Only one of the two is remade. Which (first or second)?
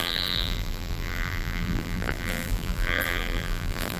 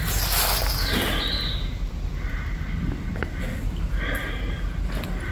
first